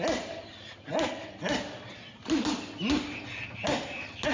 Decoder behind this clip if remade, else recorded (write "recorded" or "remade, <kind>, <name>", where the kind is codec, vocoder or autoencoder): recorded